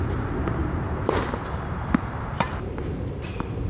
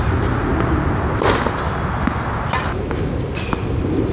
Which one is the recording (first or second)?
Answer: second